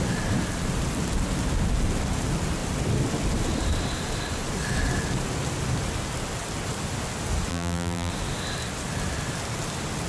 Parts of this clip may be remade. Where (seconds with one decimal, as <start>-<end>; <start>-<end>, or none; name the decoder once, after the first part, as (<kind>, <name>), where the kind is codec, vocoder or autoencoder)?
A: 7.5-8.1 (vocoder, BigVGAN v2)